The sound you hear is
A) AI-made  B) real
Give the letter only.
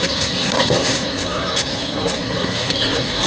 A